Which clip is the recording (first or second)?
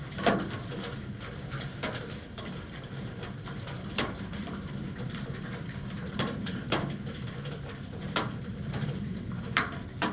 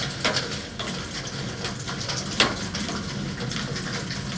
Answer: second